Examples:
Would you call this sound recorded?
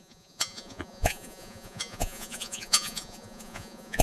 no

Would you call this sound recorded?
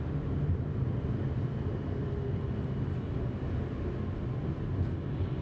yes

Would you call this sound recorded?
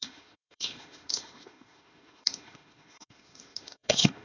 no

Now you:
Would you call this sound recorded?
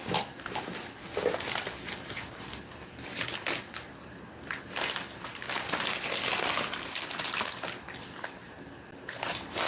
yes